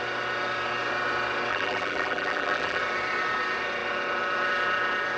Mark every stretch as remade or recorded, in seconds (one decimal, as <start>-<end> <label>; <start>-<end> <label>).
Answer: 0.0-1.5 recorded; 1.5-2.8 remade; 2.8-5.2 recorded